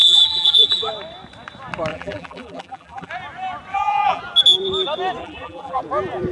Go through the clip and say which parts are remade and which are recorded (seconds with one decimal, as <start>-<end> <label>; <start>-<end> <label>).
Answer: 0.0-0.9 remade; 0.9-1.9 recorded; 1.9-3.1 remade; 3.1-3.7 recorded; 3.7-4.2 remade; 4.2-5.2 recorded; 5.2-5.8 remade; 5.8-6.3 recorded